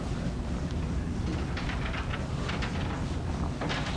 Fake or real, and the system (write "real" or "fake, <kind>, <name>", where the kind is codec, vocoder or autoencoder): real